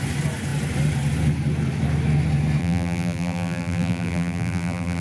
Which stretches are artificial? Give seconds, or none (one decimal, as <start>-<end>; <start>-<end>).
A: 2.6-5.0